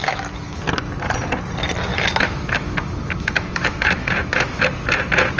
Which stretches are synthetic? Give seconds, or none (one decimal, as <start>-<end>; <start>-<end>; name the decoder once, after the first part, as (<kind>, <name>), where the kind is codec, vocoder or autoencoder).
0.0-0.6 (autoencoder, DAC-VAE); 1.9-4.6